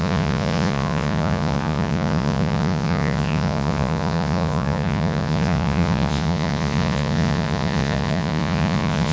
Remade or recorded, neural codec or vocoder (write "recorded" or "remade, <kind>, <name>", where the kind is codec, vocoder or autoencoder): remade, vocoder, Vocos